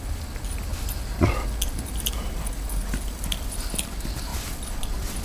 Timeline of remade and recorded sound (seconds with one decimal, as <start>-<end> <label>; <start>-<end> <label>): 0.0-0.7 recorded; 0.7-3.8 remade; 3.8-5.2 recorded